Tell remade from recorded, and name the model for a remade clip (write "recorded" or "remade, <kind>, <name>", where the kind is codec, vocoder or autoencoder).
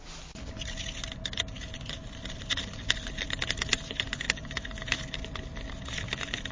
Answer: recorded